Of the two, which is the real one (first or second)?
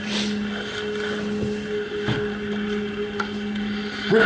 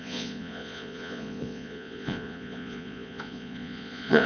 first